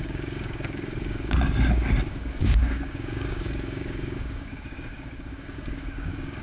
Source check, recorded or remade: remade